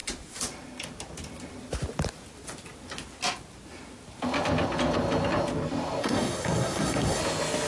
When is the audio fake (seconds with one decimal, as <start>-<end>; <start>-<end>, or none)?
6.0-7.2